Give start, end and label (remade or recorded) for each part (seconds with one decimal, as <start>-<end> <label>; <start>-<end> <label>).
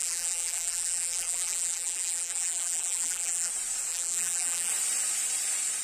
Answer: 0.0-3.5 remade; 3.5-3.9 recorded; 3.9-4.7 remade; 4.7-5.8 recorded